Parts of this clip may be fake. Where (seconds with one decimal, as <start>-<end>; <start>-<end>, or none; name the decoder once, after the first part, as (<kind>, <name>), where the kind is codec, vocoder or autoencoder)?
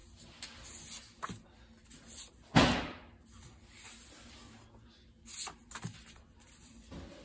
none